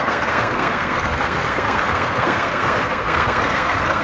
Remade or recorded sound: remade